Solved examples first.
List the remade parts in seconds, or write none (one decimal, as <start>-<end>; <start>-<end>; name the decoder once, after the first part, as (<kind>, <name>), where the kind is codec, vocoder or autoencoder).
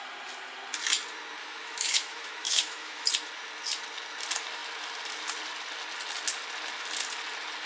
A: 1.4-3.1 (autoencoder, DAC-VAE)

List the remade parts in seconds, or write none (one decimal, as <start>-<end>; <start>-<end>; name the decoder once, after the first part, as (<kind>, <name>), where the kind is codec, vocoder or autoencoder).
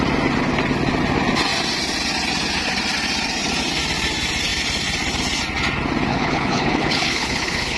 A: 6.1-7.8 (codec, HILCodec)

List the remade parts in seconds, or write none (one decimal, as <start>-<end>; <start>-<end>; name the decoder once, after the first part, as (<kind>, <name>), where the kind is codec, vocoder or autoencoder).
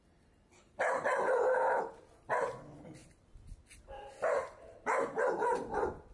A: none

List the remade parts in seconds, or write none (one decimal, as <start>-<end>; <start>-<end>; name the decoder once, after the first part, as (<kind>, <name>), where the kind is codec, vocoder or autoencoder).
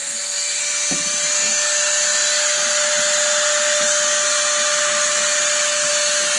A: 0.0-0.6 (codec, SNAC)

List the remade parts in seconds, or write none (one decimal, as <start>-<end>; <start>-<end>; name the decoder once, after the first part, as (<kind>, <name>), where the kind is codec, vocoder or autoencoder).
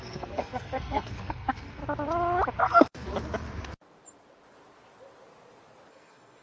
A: 0.0-1.8 (codec, SNAC); 2.6-3.1; 5.9-6.4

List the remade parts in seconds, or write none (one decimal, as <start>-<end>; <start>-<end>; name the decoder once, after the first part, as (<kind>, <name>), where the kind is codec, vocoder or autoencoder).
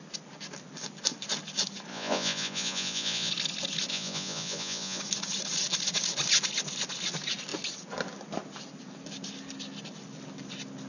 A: 1.9-3.3 (vocoder, Vocos); 3.9-5.0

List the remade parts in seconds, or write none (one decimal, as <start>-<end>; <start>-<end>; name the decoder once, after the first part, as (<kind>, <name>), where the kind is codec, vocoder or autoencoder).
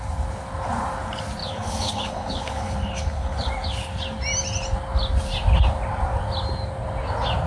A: 1.4-3.5 (codec, HILCodec)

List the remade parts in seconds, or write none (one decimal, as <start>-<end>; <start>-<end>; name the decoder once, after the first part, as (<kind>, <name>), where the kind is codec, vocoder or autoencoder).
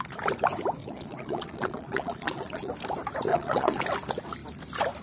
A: 0.8-2.7 (vocoder, Vocos); 3.3-3.8